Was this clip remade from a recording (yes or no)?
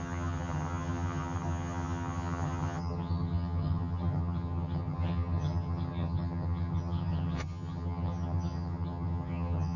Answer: yes